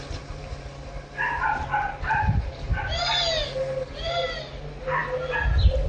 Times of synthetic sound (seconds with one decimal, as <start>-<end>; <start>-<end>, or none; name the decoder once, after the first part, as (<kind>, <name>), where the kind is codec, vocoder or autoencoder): none